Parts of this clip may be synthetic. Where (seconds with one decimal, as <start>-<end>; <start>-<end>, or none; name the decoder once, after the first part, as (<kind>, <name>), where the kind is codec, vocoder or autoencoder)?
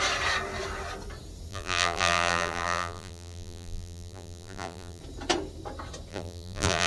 1.5-5.0 (vocoder, BigVGAN v2); 6.1-6.9